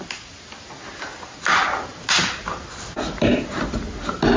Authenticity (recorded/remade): recorded